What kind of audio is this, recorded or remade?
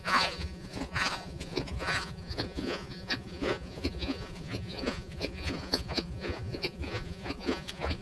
remade